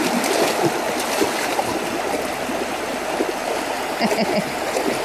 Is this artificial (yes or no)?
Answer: no